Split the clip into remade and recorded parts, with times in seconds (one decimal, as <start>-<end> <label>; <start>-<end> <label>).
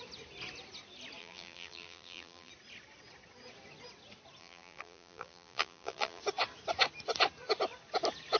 0.0-1.2 recorded; 1.2-2.5 remade; 2.5-4.4 recorded; 4.4-6.2 remade; 6.2-8.4 recorded